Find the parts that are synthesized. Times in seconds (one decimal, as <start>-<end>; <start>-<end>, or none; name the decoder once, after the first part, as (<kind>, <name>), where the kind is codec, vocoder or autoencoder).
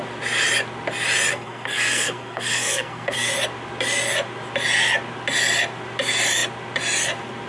1.3-3.3 (codec, SNAC)